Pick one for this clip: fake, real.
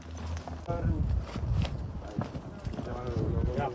real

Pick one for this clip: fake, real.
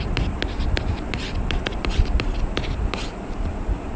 fake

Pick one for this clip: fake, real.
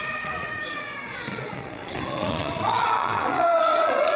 fake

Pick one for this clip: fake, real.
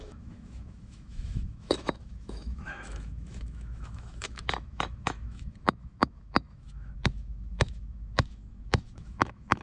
fake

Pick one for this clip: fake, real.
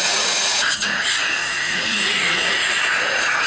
fake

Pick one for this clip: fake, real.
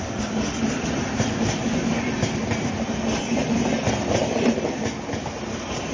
real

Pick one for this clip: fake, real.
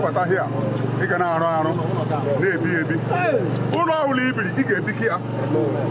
real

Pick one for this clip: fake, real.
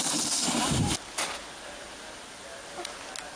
real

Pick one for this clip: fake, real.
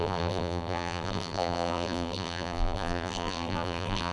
fake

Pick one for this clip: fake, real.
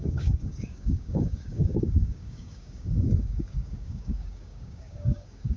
fake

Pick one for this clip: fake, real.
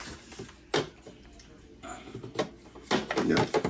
real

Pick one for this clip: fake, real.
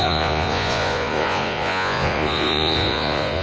fake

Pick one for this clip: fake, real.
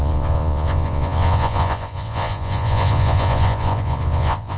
fake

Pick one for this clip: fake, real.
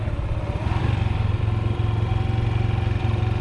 real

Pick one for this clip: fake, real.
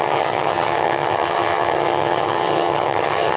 fake